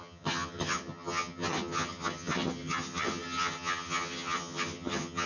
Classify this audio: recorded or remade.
remade